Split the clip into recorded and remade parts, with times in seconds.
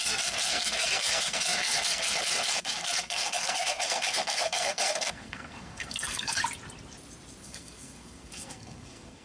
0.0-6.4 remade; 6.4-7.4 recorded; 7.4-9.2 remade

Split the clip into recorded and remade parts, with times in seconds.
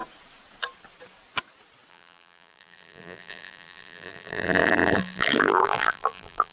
0.0-1.9 recorded; 1.9-6.5 remade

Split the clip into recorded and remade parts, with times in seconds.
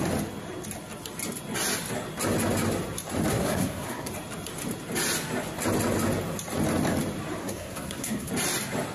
0.0-3.3 recorded; 3.3-4.1 remade; 4.1-7.4 recorded; 7.4-8.3 remade; 8.3-8.9 recorded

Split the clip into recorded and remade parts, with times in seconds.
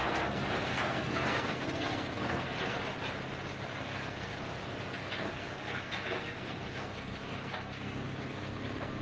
0.0-2.8 remade; 2.8-3.8 recorded; 3.8-4.3 remade; 4.3-4.8 recorded; 4.8-9.0 remade